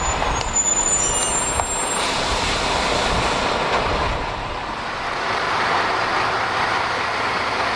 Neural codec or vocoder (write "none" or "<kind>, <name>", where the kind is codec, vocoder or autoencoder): none